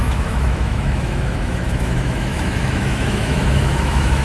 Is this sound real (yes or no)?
no